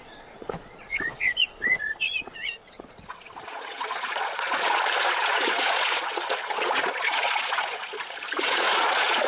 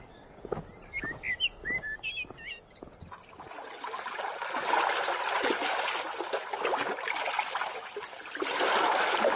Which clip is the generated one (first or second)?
first